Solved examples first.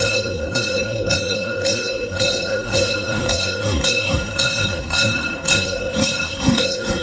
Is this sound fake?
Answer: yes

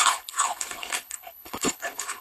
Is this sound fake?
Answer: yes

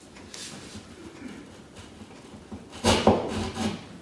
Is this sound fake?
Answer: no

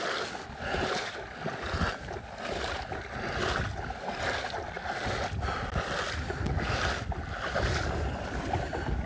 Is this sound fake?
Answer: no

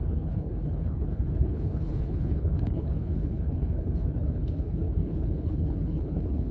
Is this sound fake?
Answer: yes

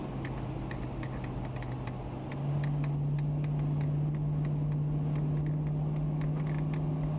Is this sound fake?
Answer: no